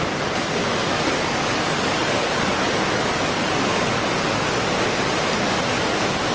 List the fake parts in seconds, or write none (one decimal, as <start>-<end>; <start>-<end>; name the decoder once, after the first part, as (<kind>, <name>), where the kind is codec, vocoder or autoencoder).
0.6-4.4 (codec, DAC)